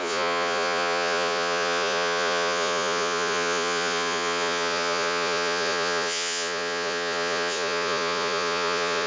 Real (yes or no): no